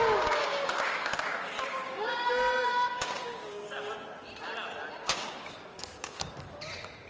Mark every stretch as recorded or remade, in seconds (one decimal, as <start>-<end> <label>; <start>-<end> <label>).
0.0-2.3 remade; 2.3-2.7 recorded; 2.7-3.9 remade; 3.9-5.0 recorded; 5.0-6.3 remade; 6.3-7.1 recorded